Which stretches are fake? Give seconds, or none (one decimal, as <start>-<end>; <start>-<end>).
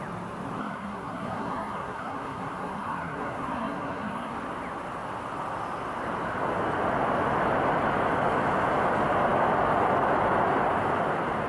0.6-4.3